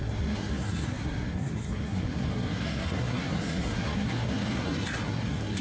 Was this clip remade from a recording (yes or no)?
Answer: yes